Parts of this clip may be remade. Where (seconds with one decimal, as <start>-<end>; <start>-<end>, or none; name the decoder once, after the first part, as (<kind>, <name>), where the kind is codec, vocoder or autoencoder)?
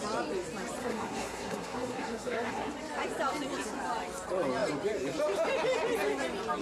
0.8-2.7 (codec, SNAC)